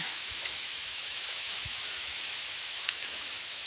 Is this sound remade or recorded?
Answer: remade